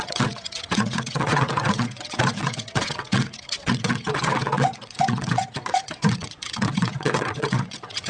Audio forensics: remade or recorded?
remade